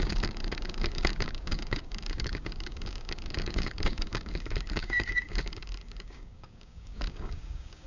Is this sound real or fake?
fake